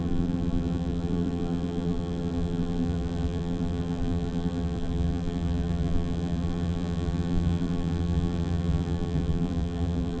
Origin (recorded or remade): remade